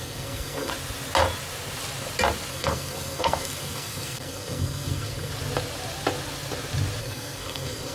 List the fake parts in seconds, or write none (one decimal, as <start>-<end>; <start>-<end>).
0.0-0.7; 2.5-5.3; 7.0-7.9